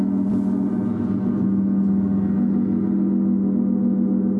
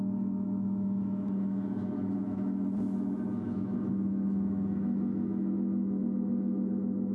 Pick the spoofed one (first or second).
second